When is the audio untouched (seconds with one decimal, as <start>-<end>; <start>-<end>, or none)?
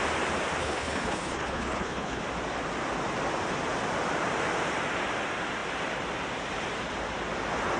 0.0-0.6; 2.2-7.8